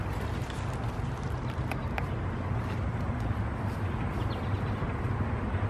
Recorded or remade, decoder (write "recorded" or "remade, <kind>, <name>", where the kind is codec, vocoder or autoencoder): recorded